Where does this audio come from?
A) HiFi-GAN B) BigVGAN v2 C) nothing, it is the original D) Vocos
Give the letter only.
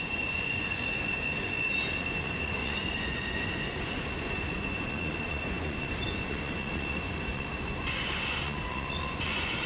D